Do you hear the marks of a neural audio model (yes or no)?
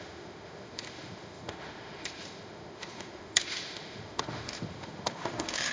yes